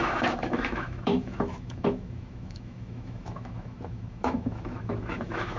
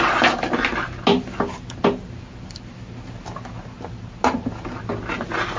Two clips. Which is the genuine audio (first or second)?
second